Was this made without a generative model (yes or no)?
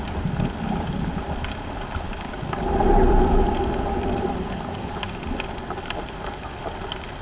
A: yes